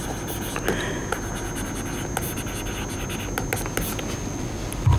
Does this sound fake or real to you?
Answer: real